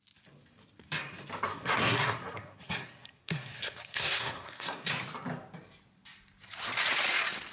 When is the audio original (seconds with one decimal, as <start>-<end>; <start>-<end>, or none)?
0.0-1.5; 4.9-7.5

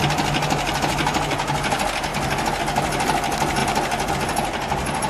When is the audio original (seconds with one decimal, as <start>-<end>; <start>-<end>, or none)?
0.0-5.1

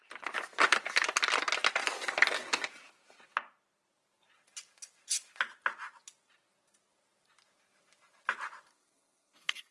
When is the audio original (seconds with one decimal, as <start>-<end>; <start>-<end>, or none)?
0.0-8.7

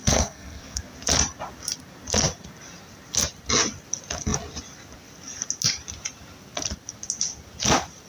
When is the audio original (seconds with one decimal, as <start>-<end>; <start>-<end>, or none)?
0.8-8.1

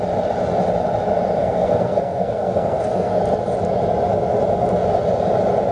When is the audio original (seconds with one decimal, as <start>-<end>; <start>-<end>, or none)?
0.0-1.4; 3.2-5.7

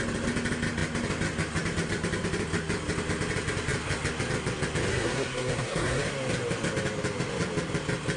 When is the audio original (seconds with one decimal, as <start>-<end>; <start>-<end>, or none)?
0.0-4.9; 6.0-8.2

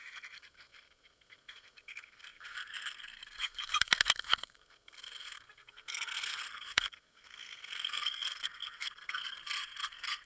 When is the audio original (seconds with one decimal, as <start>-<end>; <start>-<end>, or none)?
none

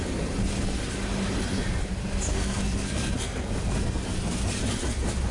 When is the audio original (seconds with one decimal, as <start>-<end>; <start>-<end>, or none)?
0.0-2.3; 3.5-5.3